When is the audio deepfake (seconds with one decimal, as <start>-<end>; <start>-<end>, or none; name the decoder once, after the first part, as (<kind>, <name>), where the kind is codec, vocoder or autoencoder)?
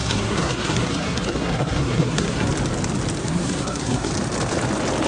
0.0-2.5 (codec, SNAC); 3.2-4.1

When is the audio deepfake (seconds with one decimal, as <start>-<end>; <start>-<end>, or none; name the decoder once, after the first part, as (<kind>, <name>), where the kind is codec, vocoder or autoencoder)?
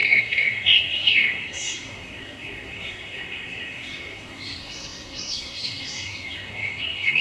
0.0-7.2 (codec, SNAC)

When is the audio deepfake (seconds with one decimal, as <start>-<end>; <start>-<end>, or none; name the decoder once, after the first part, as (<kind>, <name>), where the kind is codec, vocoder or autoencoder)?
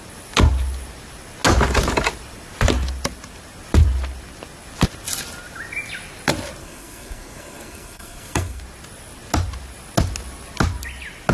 6.6-8.6 (codec, SNAC)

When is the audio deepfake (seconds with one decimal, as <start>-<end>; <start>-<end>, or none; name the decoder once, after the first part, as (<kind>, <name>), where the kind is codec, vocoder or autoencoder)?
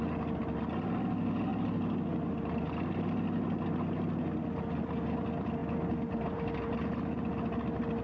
none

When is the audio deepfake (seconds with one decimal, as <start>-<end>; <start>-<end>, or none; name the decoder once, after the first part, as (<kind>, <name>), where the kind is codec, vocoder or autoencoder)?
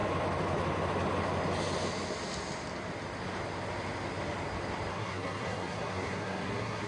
4.9-6.9 (codec, SNAC)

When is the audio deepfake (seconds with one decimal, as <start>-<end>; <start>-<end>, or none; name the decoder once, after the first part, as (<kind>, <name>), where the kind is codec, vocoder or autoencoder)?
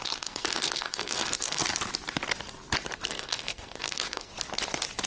0.0-1.6 (codec, SNAC); 3.1-4.3